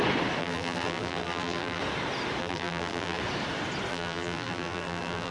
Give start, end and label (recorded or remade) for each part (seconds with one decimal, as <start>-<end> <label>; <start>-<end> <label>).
0.0-0.4 recorded; 0.4-1.8 remade; 1.8-2.4 recorded; 2.4-3.2 remade; 3.2-3.9 recorded; 3.9-5.3 remade